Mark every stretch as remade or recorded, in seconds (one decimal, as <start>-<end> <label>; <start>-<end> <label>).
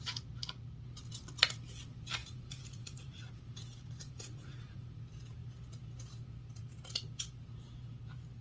0.0-2.2 recorded; 2.2-3.2 remade; 3.2-4.0 recorded; 4.0-4.9 remade; 4.9-8.4 recorded